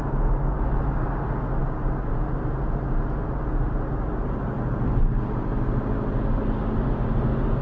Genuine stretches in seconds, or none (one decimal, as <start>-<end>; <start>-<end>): 0.0-7.6